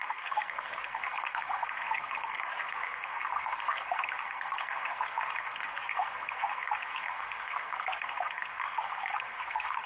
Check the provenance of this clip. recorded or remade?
remade